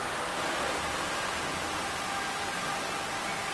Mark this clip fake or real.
real